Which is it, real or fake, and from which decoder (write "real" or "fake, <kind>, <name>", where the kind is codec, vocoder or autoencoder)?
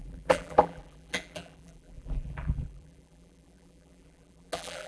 fake, vocoder, BigVGAN v2